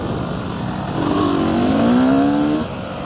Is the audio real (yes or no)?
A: yes